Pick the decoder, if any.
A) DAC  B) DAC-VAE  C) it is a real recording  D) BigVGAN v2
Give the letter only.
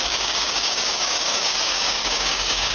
A